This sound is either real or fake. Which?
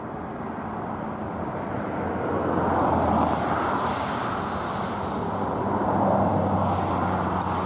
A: real